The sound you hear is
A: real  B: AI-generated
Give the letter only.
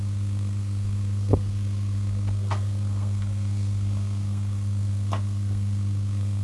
B